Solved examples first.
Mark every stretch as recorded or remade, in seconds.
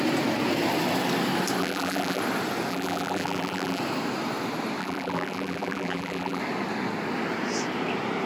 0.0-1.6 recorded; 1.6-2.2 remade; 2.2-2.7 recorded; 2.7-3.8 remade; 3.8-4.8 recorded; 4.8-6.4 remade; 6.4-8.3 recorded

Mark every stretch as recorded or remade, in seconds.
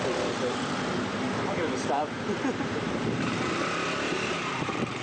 0.0-1.1 recorded; 1.1-3.6 remade; 3.6-4.1 recorded; 4.1-5.0 remade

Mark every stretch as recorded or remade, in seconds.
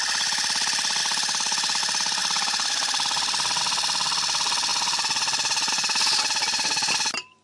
0.0-1.0 recorded; 1.0-1.8 remade; 1.8-2.2 recorded; 2.2-3.6 remade; 3.6-7.4 recorded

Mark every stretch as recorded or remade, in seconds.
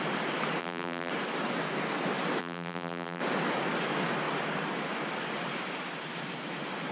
0.0-0.6 recorded; 0.6-1.1 remade; 1.1-2.4 recorded; 2.4-3.2 remade; 3.2-6.9 recorded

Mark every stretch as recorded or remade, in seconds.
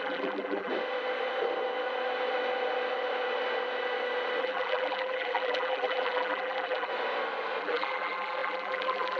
0.0-0.7 remade; 0.7-4.4 recorded; 4.4-6.9 remade; 6.9-7.6 recorded; 7.6-9.2 remade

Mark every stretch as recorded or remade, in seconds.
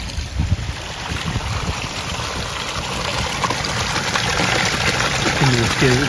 0.0-0.4 recorded; 0.4-2.4 remade; 2.4-3.1 recorded; 3.1-5.4 remade; 5.4-6.1 recorded